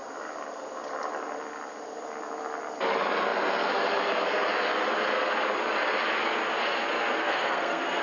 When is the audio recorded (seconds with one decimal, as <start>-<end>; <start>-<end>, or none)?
0.0-7.2